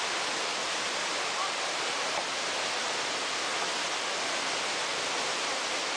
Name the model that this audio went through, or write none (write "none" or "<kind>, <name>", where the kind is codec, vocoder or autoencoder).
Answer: none